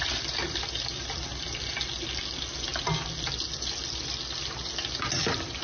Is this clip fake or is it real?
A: real